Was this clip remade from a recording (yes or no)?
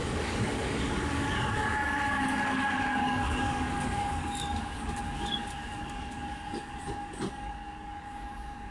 yes